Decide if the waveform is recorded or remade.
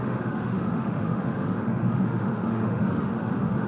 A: remade